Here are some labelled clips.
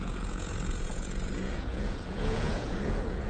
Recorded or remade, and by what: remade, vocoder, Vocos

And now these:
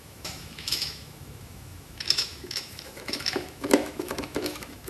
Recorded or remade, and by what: remade, autoencoder, DAC-VAE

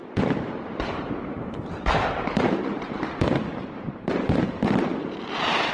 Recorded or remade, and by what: remade, vocoder, BigVGAN v2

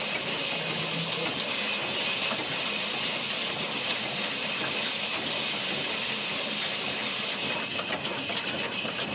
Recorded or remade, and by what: recorded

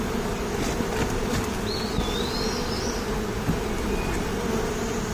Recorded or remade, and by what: recorded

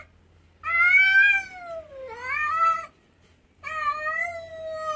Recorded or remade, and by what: recorded